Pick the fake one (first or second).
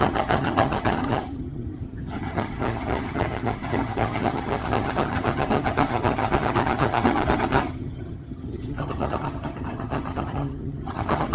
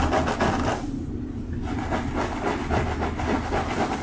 first